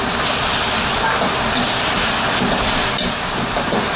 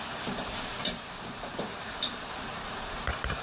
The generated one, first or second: second